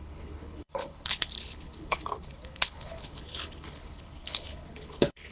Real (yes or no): no